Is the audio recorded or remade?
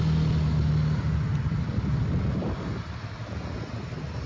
recorded